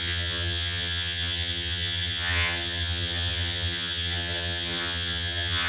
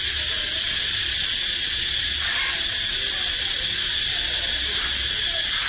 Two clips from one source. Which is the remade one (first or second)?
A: first